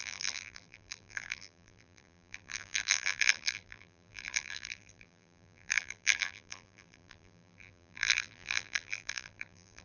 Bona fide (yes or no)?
no